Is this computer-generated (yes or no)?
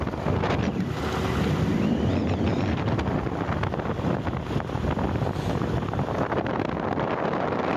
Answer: no